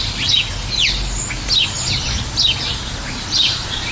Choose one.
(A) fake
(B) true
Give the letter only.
B